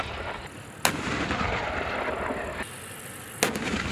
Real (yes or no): yes